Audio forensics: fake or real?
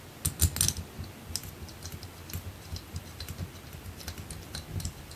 real